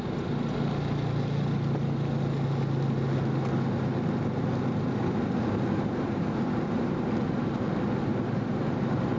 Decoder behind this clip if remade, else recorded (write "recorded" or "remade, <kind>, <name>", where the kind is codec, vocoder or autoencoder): recorded